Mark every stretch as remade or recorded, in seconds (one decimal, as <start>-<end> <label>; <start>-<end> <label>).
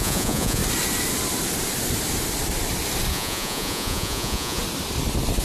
0.0-0.6 remade; 0.6-3.1 recorded; 3.1-4.6 remade; 4.6-5.4 recorded